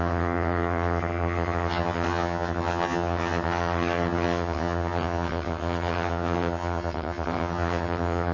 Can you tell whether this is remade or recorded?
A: remade